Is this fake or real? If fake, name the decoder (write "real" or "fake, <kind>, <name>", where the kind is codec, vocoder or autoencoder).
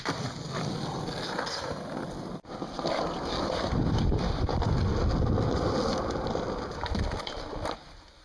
real